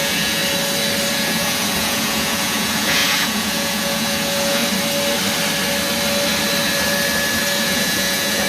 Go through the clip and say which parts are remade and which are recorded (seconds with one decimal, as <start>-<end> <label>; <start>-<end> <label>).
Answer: 0.0-0.4 remade; 0.4-1.1 recorded; 1.1-4.6 remade; 4.6-7.6 recorded; 7.6-8.5 remade